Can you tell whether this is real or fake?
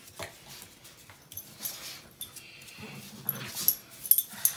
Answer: real